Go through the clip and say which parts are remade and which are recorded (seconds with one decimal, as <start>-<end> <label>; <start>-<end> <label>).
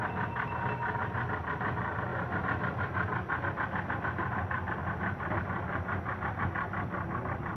0.0-7.6 recorded